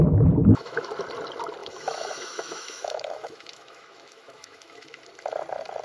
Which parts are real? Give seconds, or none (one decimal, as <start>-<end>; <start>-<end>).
0.0-0.4; 0.9-1.6; 5.0-5.8